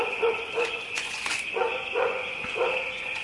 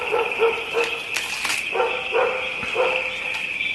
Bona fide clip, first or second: second